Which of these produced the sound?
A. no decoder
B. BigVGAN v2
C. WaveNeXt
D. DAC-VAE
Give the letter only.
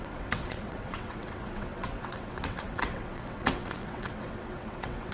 C